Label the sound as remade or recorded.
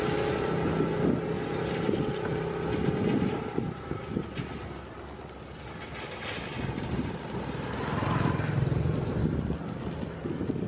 recorded